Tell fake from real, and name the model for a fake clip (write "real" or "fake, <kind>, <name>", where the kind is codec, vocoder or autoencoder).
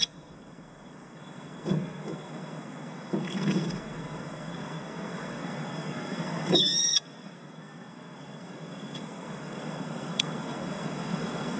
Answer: fake, codec, SNAC